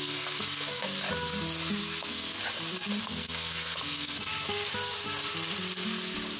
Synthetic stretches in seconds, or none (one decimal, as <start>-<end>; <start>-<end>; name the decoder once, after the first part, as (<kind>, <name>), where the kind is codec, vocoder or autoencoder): 0.0-0.8 (codec, SNAC); 1.8-2.3; 3.0-4.3

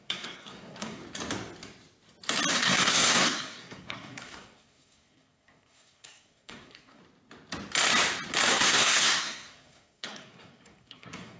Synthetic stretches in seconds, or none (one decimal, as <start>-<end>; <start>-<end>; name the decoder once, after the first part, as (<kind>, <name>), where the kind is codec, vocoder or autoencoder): 0.0-1.0 (codec, SNAC); 2.5-7.0; 8.5-11.4